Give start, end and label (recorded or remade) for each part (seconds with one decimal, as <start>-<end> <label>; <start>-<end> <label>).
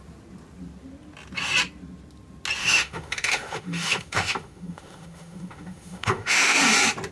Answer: 0.0-2.6 recorded; 2.6-6.6 remade; 6.6-7.1 recorded